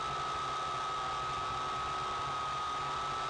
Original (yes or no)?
yes